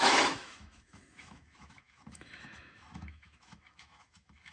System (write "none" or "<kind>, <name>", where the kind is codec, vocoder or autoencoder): autoencoder, DAC-VAE